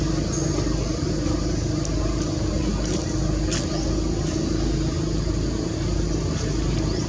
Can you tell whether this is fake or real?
real